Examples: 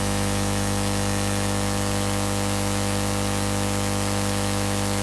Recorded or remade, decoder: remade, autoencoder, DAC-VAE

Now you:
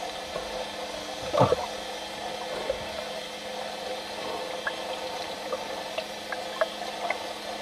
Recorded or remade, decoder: recorded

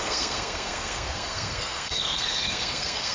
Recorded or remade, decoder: remade, codec, SNAC